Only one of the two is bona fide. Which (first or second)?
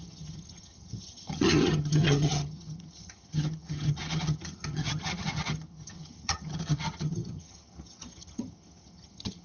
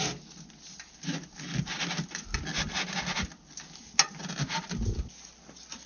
second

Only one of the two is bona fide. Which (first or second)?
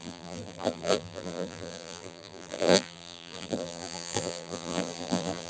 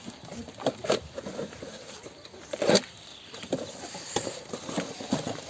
second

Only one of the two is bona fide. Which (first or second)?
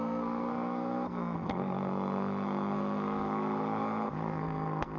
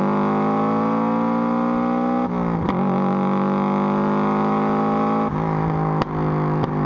second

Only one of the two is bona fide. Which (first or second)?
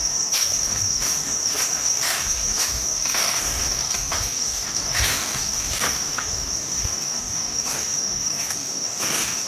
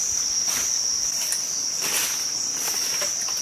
second